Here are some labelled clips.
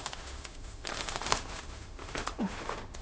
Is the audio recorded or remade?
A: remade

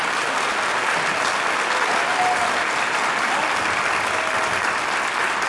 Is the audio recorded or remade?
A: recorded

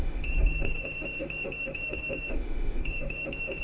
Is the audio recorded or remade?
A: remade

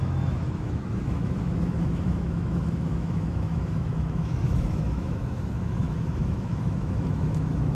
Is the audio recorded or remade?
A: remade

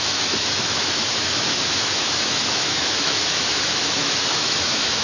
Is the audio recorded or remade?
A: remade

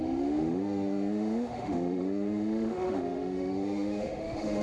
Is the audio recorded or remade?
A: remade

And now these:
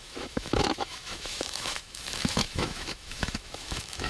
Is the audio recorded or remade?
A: remade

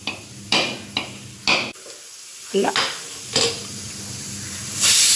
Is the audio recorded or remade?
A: recorded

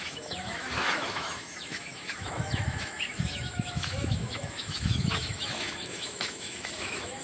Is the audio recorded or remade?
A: remade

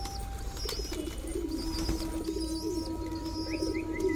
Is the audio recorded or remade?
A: recorded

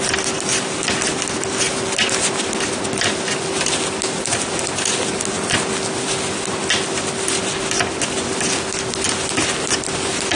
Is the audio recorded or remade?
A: recorded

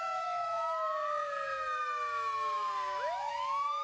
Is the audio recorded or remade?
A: remade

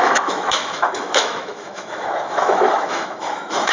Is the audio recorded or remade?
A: remade